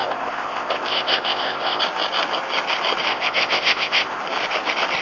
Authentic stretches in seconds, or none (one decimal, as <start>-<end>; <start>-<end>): 1.8-3.1; 4.2-5.0